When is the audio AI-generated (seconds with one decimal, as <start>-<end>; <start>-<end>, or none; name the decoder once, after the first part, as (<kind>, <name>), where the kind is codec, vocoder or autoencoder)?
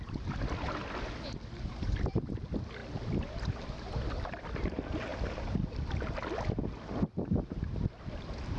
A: none